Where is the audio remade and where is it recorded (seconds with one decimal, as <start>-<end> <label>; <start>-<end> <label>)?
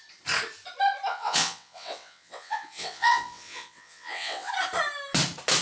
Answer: 0.0-1.1 recorded; 1.1-4.5 remade; 4.5-5.6 recorded